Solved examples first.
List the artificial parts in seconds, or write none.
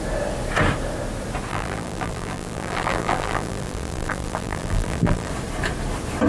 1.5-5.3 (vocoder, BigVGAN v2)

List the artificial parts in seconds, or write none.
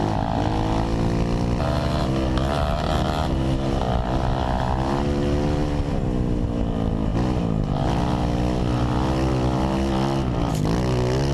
none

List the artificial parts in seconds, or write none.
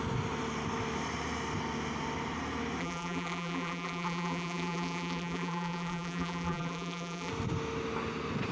2.8-7.3 (vocoder, BigVGAN v2)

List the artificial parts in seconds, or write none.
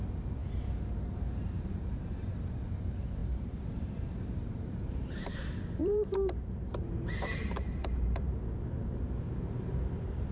0.0-8.3 (vocoder, BigVGAN v2); 8.8-10.3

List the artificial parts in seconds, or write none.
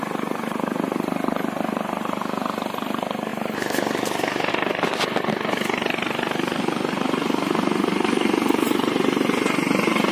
none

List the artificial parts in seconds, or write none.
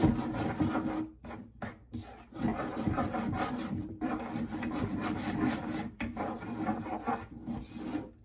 2.5-7.1 (vocoder, BigVGAN v2)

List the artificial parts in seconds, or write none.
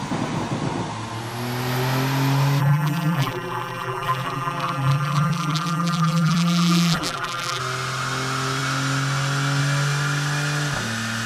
2.6-7.6 (vocoder, BigVGAN v2)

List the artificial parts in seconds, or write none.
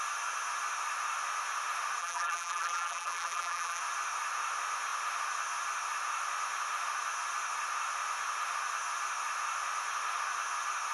2.0-3.8 (vocoder, BigVGAN v2)